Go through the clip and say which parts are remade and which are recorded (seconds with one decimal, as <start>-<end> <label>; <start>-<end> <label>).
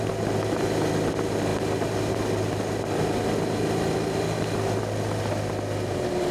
0.0-6.3 recorded